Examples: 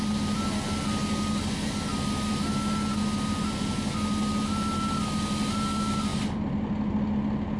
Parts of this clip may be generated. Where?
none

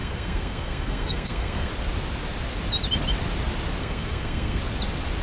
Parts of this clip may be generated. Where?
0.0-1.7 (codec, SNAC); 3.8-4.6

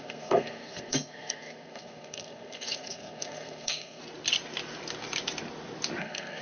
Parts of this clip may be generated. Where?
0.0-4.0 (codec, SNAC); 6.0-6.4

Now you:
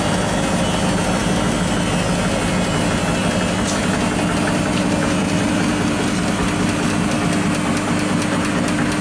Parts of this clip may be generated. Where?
none

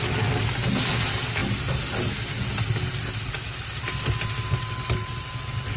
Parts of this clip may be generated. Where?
none

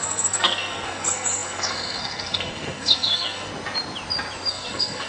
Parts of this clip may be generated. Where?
0.0-3.5 (codec, SNAC); 4.5-5.1

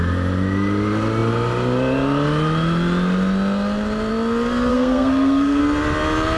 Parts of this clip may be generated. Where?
4.7-5.6 (codec, SNAC)

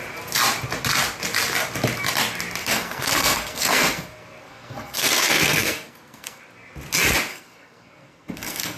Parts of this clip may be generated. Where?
2.6-6.4 (codec, SNAC); 7.3-8.8